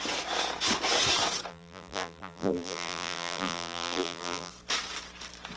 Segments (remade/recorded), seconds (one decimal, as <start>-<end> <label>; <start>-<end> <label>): 0.0-1.5 recorded; 1.5-4.5 remade; 4.5-5.6 recorded